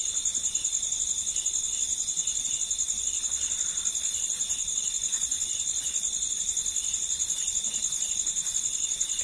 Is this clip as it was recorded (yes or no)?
yes